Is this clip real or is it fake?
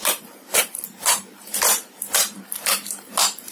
fake